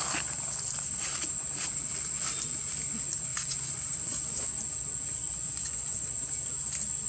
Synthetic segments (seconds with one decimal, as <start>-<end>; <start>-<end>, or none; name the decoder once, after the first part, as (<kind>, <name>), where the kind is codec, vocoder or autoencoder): 3.3-4.4 (vocoder, Vocos); 5.2-6.1